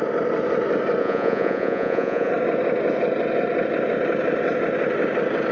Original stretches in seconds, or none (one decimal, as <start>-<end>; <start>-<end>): 0.0-1.0; 2.3-5.5